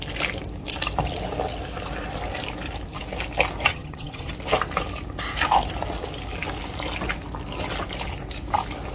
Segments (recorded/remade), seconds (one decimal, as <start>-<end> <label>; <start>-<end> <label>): 0.0-3.7 recorded; 3.7-4.3 remade; 4.3-8.9 recorded